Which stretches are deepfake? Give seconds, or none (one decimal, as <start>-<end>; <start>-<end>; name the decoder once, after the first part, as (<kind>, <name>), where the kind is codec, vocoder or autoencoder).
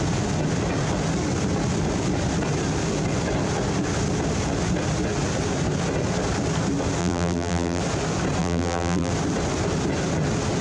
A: 7.0-7.8 (vocoder, BigVGAN v2); 8.4-9.1